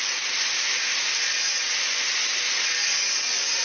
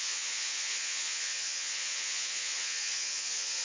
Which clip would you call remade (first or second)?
second